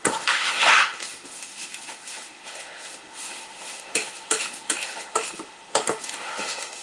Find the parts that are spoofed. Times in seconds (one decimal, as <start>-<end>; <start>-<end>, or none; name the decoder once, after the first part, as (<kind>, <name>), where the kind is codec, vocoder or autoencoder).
0.0-6.8 (autoencoder, DAC-VAE)